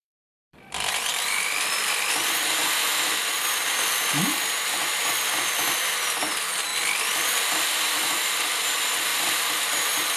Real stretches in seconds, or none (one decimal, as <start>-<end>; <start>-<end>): 2.3-3.6; 4.2-6.7; 8.4-10.2